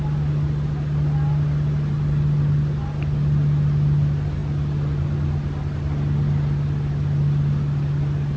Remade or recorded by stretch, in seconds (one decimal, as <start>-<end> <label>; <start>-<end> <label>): 0.0-8.4 recorded